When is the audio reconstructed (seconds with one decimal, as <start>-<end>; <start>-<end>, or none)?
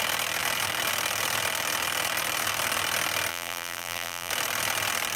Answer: 3.3-4.3